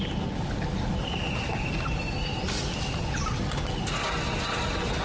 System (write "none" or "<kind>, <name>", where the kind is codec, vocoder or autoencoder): none